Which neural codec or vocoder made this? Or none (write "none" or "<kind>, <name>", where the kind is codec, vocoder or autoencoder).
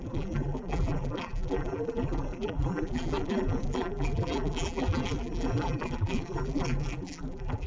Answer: vocoder, BigVGAN v2